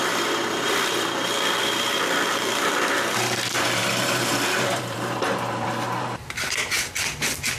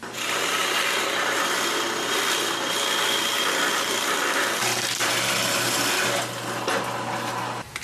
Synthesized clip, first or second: first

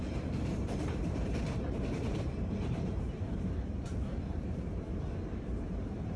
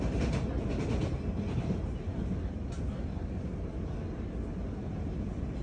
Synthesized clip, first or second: first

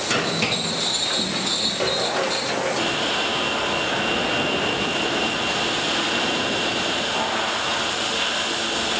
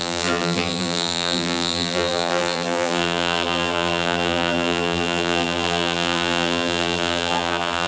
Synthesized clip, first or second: second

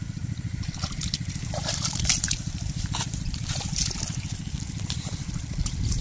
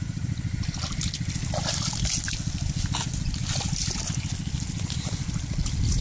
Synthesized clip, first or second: first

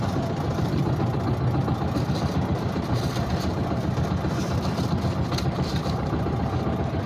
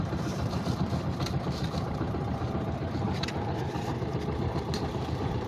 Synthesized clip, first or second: second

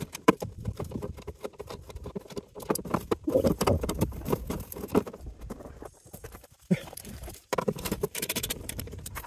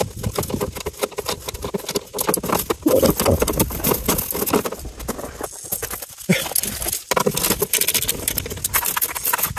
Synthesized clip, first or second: first